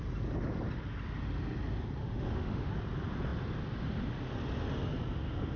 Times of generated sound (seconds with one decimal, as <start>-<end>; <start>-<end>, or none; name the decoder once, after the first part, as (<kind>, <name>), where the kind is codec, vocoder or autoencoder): 2.0-2.7 (autoencoder, DAC-VAE)